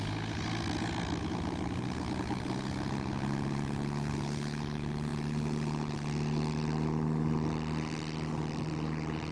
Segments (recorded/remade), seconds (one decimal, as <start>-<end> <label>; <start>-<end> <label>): 0.0-9.3 recorded